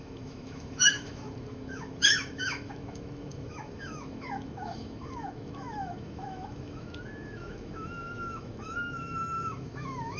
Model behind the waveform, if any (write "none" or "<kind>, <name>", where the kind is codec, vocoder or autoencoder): autoencoder, DAC-VAE